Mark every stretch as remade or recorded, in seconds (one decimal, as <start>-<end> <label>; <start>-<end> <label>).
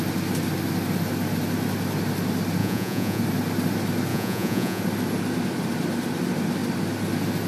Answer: 0.0-2.6 recorded; 2.6-3.2 remade; 3.2-4.1 recorded; 4.1-4.8 remade; 4.8-7.5 recorded